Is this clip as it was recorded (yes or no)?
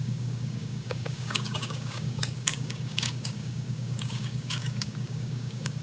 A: no